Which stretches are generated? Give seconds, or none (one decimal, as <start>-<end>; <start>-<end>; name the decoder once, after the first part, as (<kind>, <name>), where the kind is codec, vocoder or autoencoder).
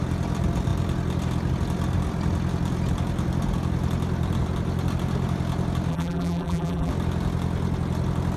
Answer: 5.9-6.9 (vocoder, BigVGAN v2)